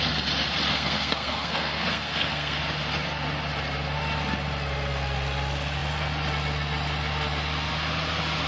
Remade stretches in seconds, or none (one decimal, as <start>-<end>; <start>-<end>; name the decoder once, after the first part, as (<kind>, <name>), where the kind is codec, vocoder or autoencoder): 0.7-2.6 (codec, SNAC)